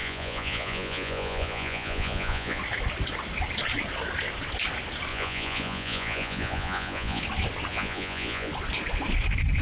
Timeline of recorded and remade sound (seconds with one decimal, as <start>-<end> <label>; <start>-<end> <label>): 0.0-2.6 remade; 2.6-5.1 recorded; 5.1-7.2 remade; 7.2-7.7 recorded; 7.7-8.5 remade; 8.5-9.6 recorded